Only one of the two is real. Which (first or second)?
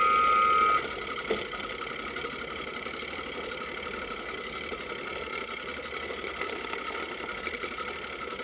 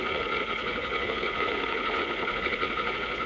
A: first